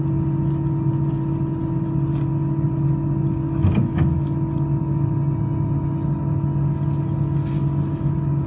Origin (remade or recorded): recorded